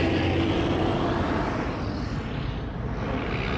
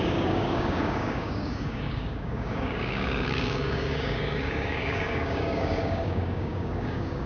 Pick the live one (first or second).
first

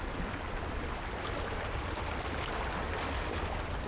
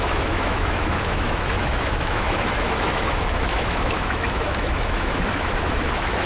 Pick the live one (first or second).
first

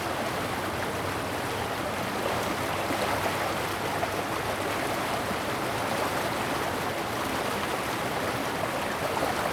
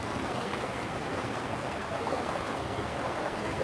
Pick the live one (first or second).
first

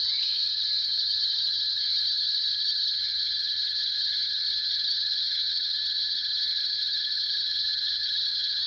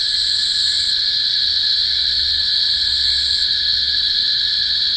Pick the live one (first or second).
second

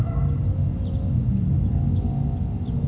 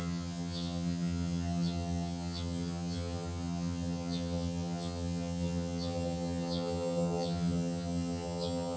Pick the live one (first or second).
first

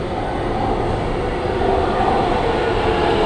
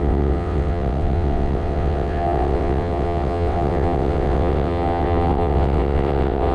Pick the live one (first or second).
first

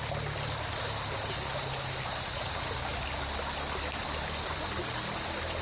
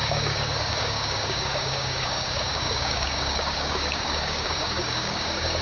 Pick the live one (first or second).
first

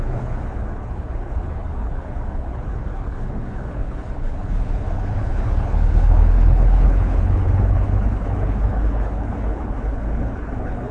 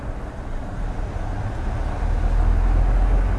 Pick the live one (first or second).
second